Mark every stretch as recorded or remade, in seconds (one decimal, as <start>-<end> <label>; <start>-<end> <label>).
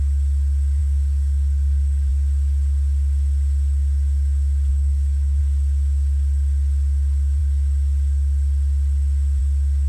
0.0-0.8 recorded; 0.8-2.1 remade; 2.1-4.7 recorded; 4.7-5.4 remade; 5.4-9.9 recorded